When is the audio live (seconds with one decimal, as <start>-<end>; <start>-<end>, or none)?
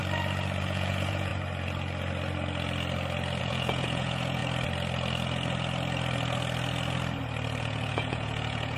0.0-0.6; 1.3-3.4; 4.4-7.6